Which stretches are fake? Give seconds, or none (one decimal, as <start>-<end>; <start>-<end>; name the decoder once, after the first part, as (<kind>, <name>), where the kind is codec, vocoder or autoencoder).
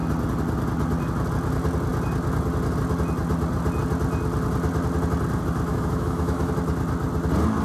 5.7-6.5 (autoencoder, DAC-VAE)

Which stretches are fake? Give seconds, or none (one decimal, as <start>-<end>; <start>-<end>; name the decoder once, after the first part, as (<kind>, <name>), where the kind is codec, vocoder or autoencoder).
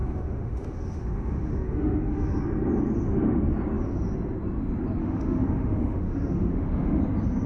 0.0-2.4 (autoencoder, DAC-VAE); 5.0-7.0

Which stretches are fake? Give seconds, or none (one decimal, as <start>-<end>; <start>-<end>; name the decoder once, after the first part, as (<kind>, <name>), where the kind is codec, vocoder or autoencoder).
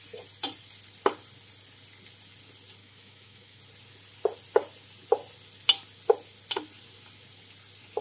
2.8-3.6 (autoencoder, DAC-VAE)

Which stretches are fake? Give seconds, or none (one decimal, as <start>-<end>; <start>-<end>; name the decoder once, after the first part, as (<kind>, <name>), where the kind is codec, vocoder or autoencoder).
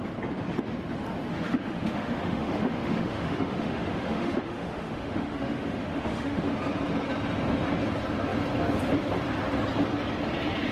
1.3-6.4 (autoencoder, DAC-VAE)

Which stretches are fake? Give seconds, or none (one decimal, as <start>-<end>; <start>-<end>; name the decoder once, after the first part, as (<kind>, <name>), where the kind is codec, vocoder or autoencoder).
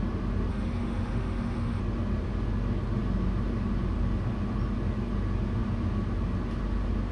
0.5-1.8 (autoencoder, DAC-VAE)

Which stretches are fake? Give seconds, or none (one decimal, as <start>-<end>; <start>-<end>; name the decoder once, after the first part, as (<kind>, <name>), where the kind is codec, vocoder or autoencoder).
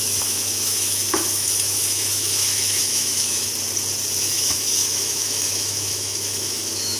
0.0-3.5 (autoencoder, DAC-VAE); 4.2-7.0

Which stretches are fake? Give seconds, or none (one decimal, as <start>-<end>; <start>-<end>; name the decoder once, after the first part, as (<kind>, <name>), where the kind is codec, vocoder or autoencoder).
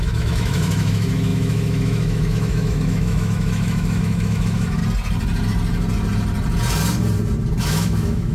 0.0-4.8 (autoencoder, DAC-VAE); 7.6-8.3